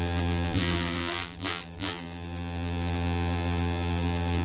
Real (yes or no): no